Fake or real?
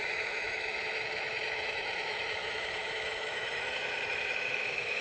fake